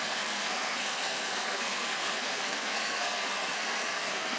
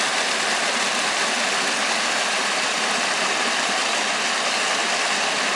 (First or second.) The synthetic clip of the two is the first